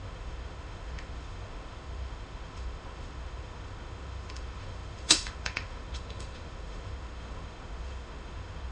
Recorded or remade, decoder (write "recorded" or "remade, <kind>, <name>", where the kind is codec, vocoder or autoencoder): remade, autoencoder, DAC-VAE